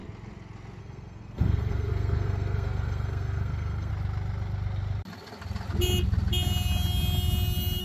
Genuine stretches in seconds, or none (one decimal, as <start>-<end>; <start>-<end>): 0.0-0.8; 3.9-7.8